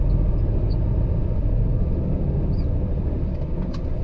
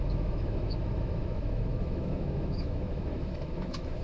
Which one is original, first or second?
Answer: first